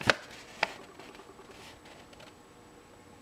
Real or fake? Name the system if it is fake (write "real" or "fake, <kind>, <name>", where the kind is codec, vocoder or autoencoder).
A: real